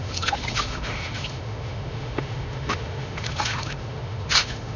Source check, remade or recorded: remade